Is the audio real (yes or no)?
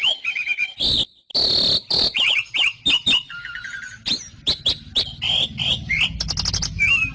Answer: yes